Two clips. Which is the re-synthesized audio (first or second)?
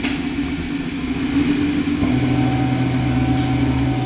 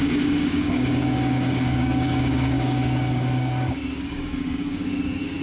second